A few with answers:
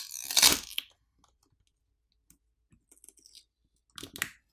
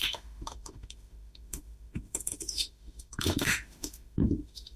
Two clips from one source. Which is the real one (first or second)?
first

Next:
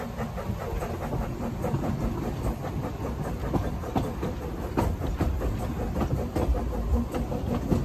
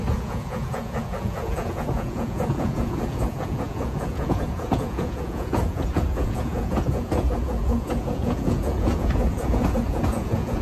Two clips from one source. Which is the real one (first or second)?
first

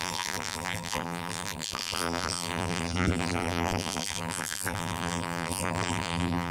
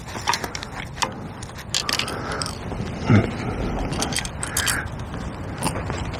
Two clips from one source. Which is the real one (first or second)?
second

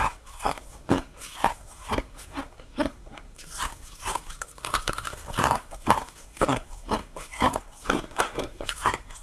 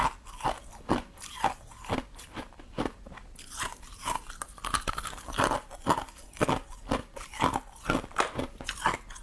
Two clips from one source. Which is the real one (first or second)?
second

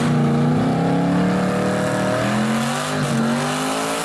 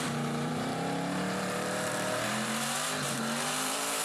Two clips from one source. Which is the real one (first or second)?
first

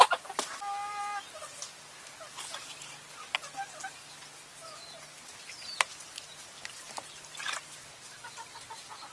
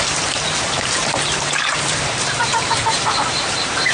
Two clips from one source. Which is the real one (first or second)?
first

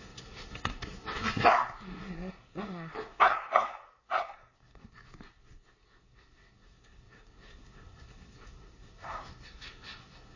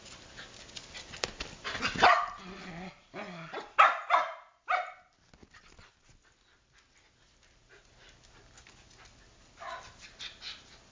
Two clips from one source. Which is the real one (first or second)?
second